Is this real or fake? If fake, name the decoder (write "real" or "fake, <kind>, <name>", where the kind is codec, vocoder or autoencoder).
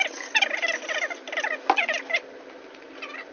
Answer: real